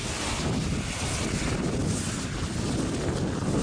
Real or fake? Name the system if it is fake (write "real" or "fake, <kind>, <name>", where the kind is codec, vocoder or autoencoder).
real